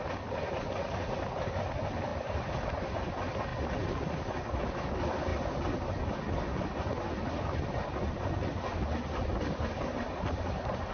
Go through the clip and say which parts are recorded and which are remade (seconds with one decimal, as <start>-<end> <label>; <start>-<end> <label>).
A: 0.0-10.9 recorded